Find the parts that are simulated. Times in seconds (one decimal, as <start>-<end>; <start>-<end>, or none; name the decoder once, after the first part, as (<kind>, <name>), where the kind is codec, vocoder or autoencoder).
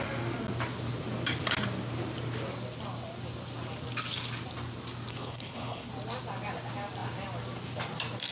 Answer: 5.1-5.9 (codec, HILCodec)